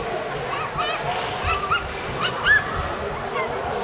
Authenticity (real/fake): real